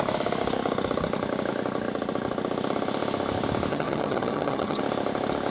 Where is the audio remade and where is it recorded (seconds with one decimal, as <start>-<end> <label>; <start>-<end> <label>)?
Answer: 0.0-3.7 recorded; 3.7-4.8 remade; 4.8-5.5 recorded